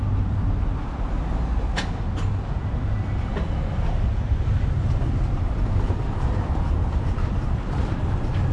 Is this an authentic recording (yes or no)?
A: yes